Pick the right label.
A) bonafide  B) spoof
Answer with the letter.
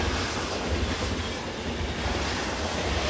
A